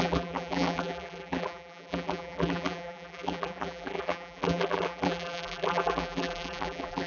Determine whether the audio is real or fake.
fake